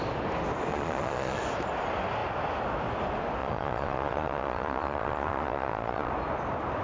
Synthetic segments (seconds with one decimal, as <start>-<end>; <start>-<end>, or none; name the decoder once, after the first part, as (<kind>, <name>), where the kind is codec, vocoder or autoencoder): 0.7-1.4 (vocoder, Vocos); 3.4-6.1